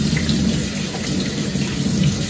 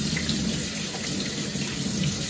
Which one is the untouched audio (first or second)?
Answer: first